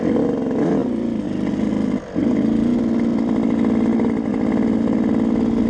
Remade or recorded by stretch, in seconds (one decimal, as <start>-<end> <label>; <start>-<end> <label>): 0.0-0.8 recorded; 0.8-1.5 remade; 1.5-3.1 recorded; 3.1-3.9 remade; 3.9-5.7 recorded